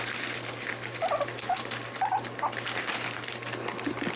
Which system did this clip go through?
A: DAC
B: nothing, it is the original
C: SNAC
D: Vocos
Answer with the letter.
B